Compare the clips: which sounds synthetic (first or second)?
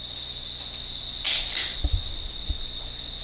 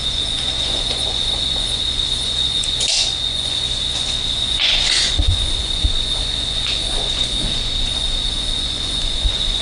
second